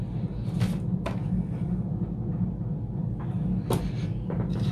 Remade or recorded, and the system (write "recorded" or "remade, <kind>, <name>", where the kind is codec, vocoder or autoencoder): recorded